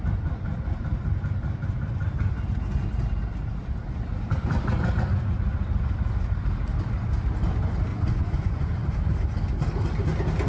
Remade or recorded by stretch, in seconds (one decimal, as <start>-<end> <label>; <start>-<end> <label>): 0.0-7.9 recorded; 7.9-8.7 remade; 8.7-10.5 recorded